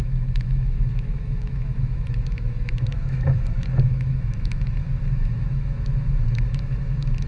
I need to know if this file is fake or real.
fake